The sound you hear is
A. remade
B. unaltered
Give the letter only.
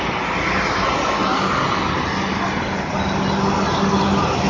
B